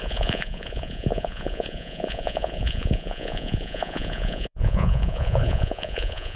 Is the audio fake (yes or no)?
yes